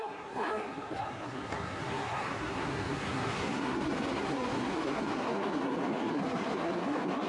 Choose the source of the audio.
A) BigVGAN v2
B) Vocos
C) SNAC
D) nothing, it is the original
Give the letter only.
C